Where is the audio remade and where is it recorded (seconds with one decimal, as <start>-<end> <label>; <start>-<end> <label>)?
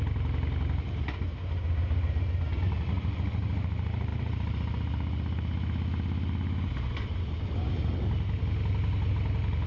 0.0-9.7 recorded